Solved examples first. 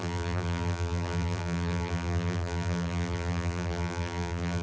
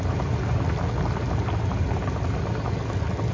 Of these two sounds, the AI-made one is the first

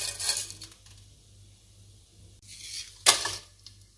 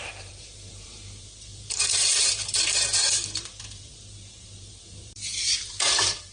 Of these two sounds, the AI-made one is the second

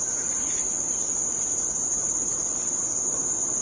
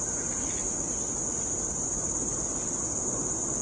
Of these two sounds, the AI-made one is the first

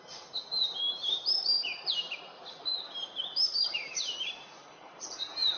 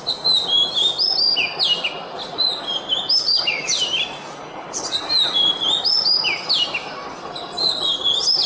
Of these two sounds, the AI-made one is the first